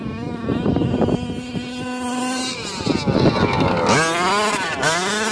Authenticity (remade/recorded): recorded